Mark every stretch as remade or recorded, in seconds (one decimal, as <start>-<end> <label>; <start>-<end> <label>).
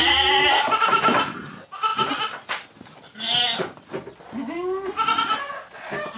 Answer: 0.0-6.2 recorded